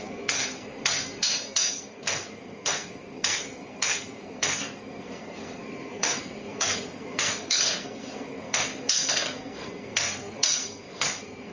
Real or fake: fake